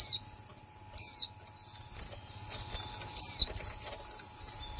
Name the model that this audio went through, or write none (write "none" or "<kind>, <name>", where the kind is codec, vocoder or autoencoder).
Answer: none